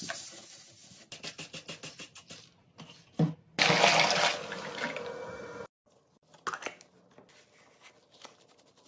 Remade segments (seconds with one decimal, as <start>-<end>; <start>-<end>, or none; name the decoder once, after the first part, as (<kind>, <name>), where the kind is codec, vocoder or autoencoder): none